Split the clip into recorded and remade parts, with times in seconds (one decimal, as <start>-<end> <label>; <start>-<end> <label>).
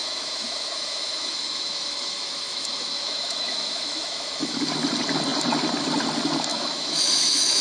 0.0-4.6 remade; 4.6-6.5 recorded; 6.5-7.6 remade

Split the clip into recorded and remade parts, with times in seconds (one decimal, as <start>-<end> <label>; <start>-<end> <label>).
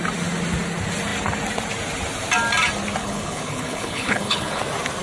0.0-3.0 recorded; 3.0-4.6 remade; 4.6-5.0 recorded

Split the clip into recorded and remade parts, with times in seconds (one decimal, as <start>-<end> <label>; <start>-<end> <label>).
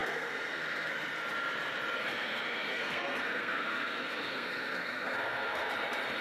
0.0-0.9 remade; 0.9-2.0 recorded; 2.0-5.7 remade; 5.7-6.2 recorded